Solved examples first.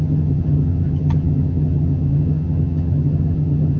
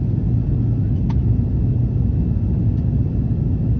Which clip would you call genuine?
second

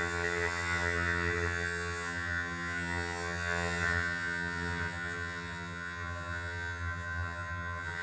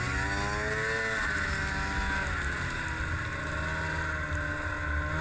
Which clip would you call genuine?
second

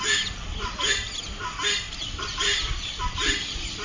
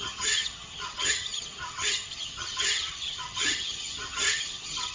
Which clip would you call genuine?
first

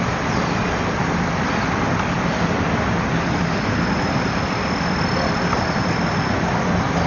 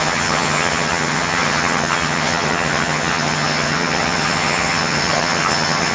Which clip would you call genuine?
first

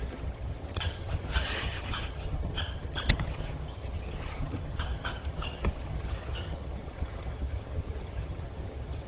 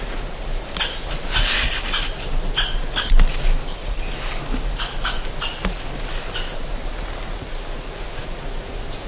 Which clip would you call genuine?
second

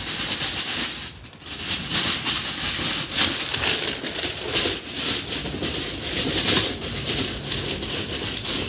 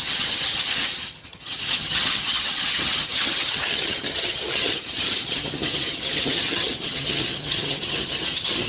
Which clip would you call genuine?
first